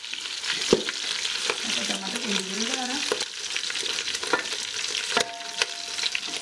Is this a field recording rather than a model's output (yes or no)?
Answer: yes